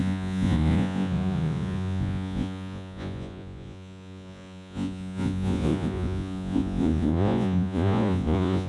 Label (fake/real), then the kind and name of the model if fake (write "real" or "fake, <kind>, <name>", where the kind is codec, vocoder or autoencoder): fake, vocoder, Vocos